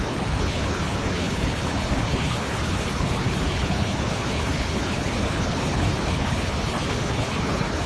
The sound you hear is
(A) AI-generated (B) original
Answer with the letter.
A